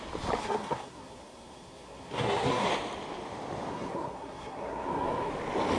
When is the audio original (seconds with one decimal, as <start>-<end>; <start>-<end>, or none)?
0.0-0.4; 2.7-3.7; 5.3-5.8